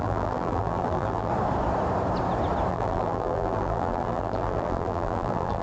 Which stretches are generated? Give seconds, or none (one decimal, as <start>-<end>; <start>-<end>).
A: 0.0-1.3; 2.7-5.6